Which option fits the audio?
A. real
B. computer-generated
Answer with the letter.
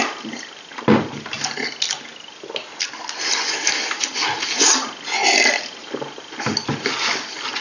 A